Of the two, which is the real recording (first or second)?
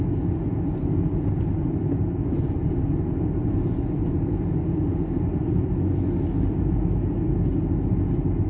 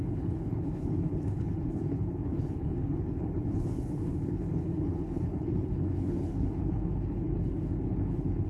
first